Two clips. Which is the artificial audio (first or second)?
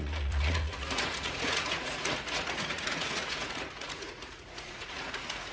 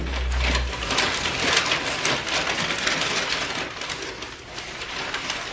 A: first